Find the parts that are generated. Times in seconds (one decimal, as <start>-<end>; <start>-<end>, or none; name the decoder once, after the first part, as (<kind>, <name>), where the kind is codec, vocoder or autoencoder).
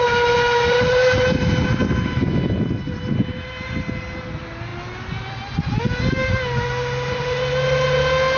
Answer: none